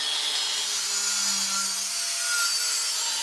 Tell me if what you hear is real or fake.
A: real